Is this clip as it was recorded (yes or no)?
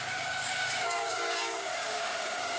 no